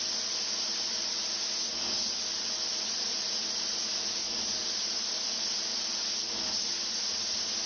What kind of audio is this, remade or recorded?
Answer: recorded